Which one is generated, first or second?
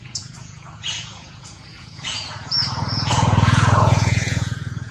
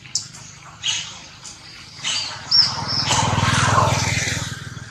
first